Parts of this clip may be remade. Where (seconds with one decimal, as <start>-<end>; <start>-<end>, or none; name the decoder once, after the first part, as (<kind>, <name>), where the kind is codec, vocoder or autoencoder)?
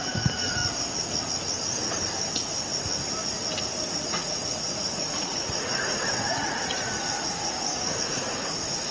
0.0-0.6 (vocoder, Vocos); 3.9-8.9